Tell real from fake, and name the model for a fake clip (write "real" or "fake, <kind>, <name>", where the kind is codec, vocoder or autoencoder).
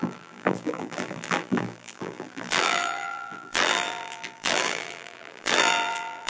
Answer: fake, vocoder, BigVGAN v2